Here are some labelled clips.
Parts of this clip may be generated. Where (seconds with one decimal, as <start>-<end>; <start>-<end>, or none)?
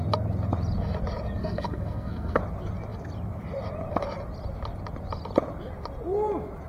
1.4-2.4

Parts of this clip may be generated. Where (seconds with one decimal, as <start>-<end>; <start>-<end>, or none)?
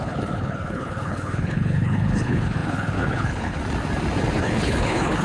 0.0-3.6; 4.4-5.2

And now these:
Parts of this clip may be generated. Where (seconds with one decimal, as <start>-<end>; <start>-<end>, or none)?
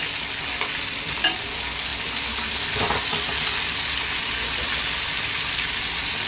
none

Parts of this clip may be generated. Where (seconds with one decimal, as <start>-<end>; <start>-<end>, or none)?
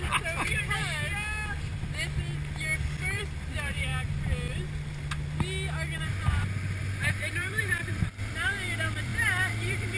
0.0-0.8; 3.0-3.9; 6.8-10.0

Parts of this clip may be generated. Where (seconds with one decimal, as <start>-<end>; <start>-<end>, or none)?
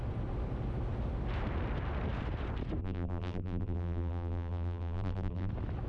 2.8-5.5